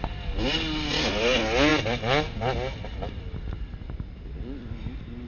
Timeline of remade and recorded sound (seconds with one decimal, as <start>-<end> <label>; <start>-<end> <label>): 0.0-5.3 recorded